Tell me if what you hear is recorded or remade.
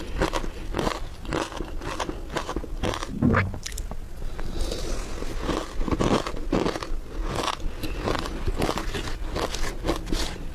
recorded